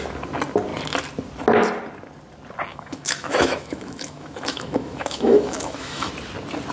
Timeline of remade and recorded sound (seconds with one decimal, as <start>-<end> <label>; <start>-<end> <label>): 0.0-2.7 recorded; 2.7-6.1 remade; 6.1-6.7 recorded